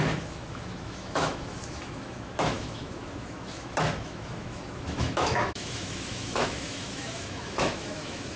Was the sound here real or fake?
fake